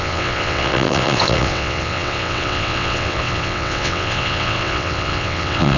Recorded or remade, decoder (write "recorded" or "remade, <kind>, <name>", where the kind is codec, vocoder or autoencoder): remade, vocoder, WaveNeXt